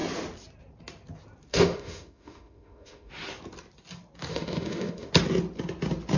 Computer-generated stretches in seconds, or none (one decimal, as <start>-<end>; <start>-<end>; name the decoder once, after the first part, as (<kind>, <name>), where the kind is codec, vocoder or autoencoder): 1.5-3.1 (autoencoder, DAC-VAE); 4.3-5.1